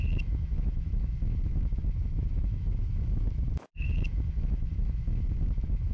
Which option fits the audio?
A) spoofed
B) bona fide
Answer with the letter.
A